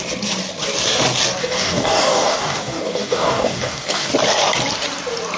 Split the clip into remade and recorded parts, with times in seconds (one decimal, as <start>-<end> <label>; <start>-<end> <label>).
0.0-1.4 recorded; 1.4-4.1 remade; 4.1-5.4 recorded